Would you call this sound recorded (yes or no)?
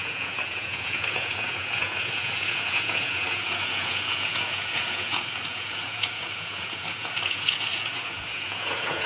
no